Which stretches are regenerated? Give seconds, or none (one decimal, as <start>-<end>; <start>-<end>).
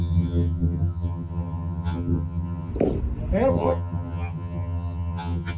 0.0-2.7; 3.5-5.6